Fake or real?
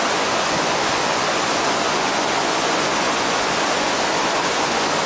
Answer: fake